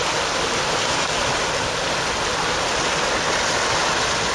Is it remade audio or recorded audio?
recorded